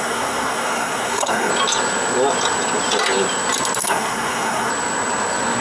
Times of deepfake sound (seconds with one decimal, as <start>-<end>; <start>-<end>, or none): 0.0-1.5; 3.8-4.7